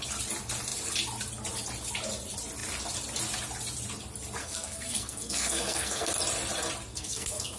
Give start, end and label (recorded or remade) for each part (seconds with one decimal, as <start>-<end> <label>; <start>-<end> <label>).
0.0-4.4 recorded; 4.4-6.1 remade; 6.1-6.9 recorded; 6.9-7.6 remade